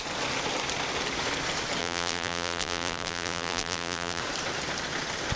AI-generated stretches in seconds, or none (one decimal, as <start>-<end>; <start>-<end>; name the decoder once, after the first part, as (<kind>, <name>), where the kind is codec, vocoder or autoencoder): 1.8-4.2 (vocoder, BigVGAN v2)